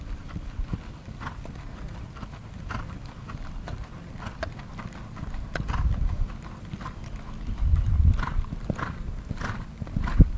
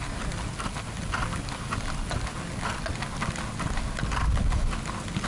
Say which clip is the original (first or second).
second